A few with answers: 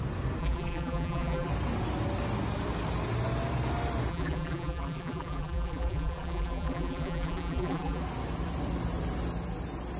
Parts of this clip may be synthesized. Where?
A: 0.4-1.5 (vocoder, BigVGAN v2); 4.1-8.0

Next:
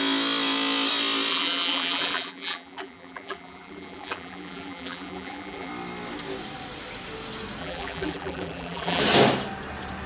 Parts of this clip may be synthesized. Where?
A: 1.3-5.7 (vocoder, BigVGAN v2); 7.6-9.0

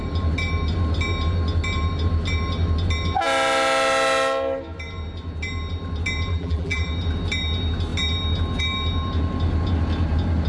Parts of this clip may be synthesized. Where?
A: 6.3-6.9 (vocoder, BigVGAN v2)